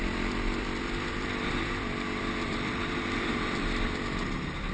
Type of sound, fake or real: fake